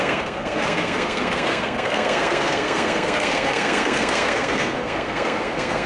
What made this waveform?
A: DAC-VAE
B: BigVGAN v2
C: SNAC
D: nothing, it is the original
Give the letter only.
C